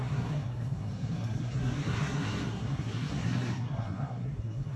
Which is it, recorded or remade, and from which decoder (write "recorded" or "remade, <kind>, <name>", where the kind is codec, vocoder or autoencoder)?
remade, codec, SNAC